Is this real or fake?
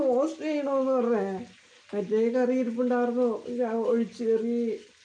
real